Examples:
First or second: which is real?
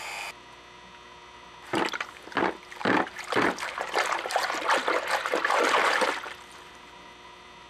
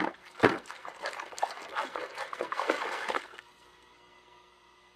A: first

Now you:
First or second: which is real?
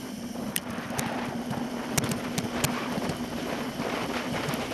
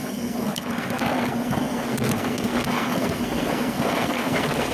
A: first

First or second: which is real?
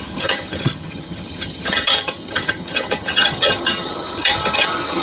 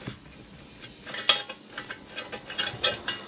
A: second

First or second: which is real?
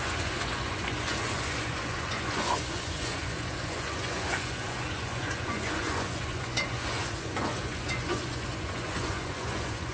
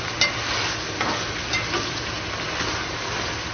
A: second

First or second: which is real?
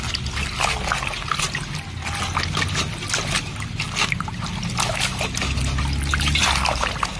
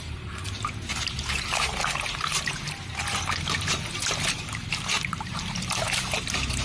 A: first